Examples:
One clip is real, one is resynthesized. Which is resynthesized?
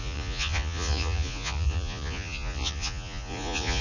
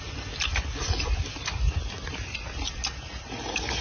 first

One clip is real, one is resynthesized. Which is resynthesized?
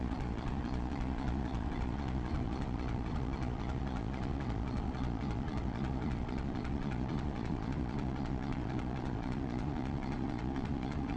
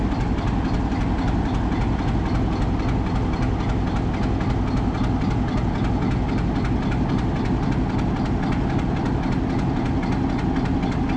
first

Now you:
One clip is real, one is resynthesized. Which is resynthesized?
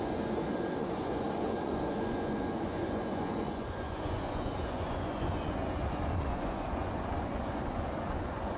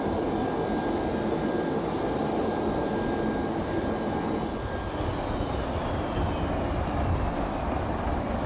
first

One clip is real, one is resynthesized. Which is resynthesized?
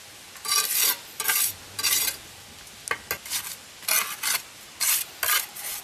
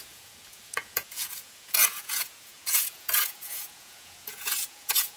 second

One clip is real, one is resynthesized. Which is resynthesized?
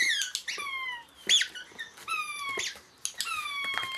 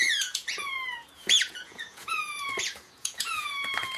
second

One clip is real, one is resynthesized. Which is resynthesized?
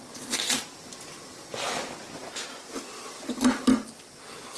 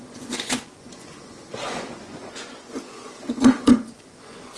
second